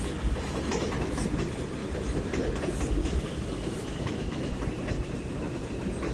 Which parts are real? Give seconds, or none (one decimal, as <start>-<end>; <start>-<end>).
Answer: 0.0-3.0; 4.5-6.1